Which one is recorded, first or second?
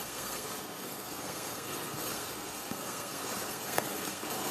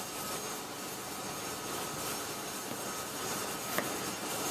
second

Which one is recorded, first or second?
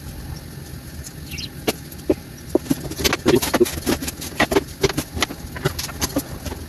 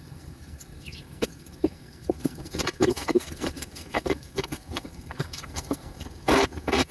first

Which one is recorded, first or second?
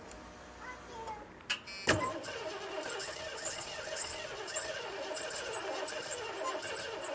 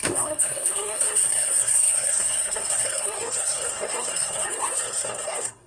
first